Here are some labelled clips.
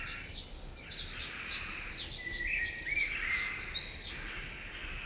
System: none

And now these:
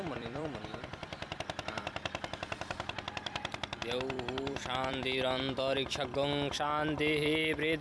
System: vocoder, BigVGAN v2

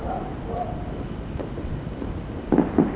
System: vocoder, BigVGAN v2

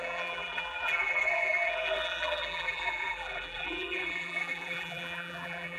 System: vocoder, BigVGAN v2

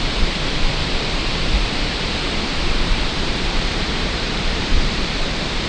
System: vocoder, BigVGAN v2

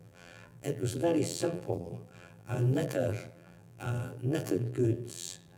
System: vocoder, BigVGAN v2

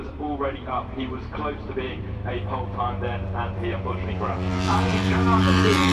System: vocoder, BigVGAN v2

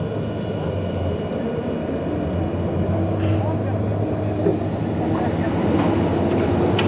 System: none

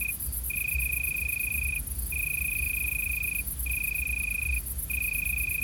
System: none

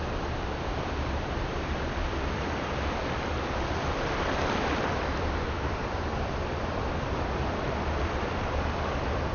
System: vocoder, BigVGAN v2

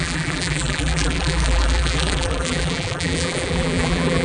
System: vocoder, BigVGAN v2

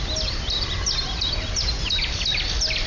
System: vocoder, BigVGAN v2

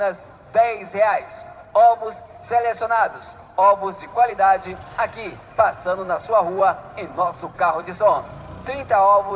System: vocoder, BigVGAN v2